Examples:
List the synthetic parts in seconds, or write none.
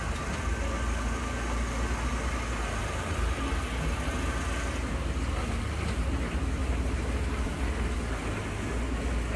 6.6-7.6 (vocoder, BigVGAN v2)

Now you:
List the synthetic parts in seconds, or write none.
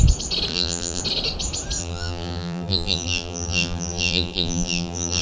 0.5-1.0 (vocoder, BigVGAN v2); 1.8-5.2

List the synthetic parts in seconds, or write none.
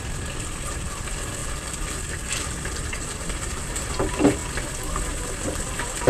none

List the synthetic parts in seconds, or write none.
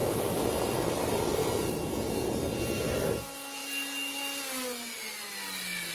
none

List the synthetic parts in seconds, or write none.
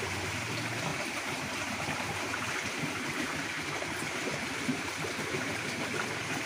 0.9-3.7 (vocoder, BigVGAN v2); 4.7-5.5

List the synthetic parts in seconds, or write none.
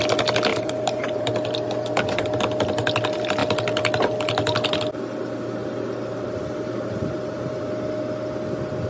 0.5-1.2 (vocoder, BigVGAN v2); 5.6-7.7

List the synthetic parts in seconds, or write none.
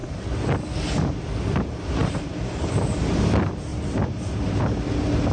2.0-3.0 (vocoder, BigVGAN v2); 3.7-4.6